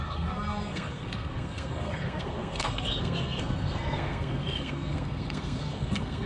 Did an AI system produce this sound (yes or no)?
yes